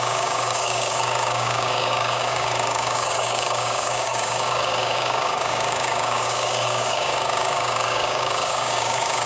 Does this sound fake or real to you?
fake